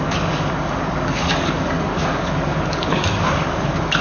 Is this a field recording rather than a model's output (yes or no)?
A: no